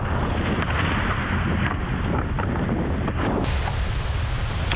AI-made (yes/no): yes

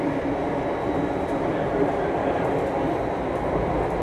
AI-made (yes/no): no